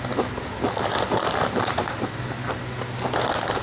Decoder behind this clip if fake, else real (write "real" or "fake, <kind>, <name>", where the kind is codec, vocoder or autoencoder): real